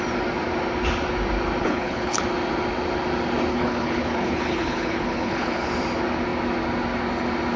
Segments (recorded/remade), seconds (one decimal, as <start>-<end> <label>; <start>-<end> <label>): 0.0-1.6 recorded; 1.6-2.2 remade; 2.2-3.5 recorded; 3.5-5.7 remade; 5.7-7.6 recorded